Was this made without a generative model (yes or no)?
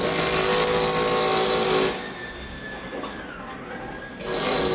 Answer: yes